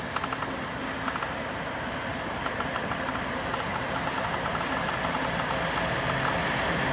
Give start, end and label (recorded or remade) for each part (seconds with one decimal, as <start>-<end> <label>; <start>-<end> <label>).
0.0-2.1 recorded; 2.1-2.9 remade; 2.9-3.7 recorded; 3.7-4.8 remade; 4.8-6.9 recorded